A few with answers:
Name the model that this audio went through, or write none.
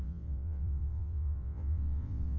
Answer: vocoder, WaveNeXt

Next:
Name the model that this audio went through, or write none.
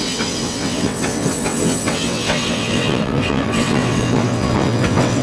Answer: vocoder, WaveNeXt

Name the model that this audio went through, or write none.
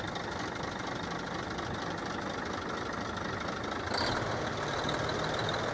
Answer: none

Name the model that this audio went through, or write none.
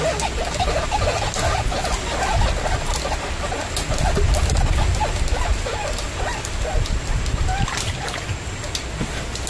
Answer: none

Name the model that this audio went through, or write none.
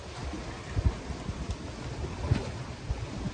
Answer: none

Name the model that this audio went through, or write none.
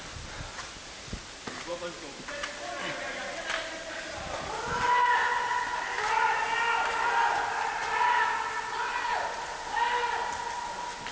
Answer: none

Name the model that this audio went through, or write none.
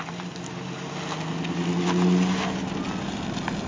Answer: none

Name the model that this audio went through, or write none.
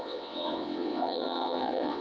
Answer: vocoder, WaveNeXt